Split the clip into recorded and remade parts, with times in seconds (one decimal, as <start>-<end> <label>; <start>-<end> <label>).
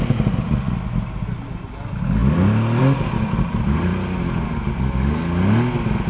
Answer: 0.0-6.1 recorded